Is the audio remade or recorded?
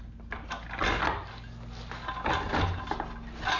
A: recorded